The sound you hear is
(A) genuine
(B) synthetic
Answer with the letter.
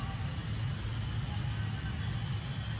A